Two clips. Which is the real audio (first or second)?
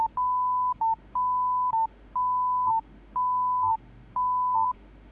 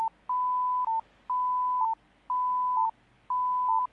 second